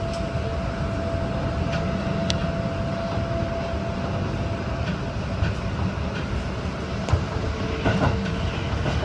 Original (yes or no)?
yes